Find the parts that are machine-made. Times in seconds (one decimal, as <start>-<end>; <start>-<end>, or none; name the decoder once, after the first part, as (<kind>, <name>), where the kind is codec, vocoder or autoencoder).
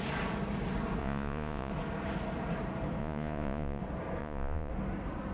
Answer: 1.0-1.7 (vocoder, Vocos); 3.0-3.8; 4.2-4.7